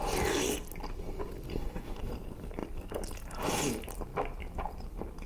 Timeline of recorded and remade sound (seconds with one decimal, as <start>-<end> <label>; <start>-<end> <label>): 0.0-1.5 recorded; 1.5-2.0 remade; 2.0-5.3 recorded